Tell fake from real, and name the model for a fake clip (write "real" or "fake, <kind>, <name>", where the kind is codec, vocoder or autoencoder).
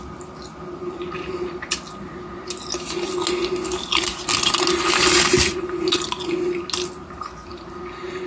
real